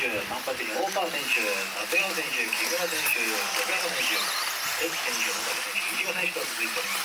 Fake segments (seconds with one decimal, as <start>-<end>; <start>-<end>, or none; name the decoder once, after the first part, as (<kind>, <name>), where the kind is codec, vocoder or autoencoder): none